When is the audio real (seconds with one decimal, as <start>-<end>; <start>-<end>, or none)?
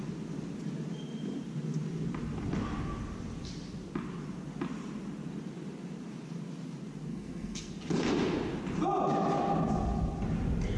0.0-7.1; 7.7-10.8